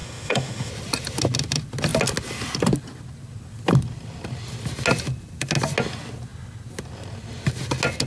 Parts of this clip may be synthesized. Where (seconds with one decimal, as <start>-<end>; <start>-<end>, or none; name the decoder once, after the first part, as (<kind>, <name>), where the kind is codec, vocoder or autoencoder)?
0.0-0.7 (autoencoder, DAC-VAE)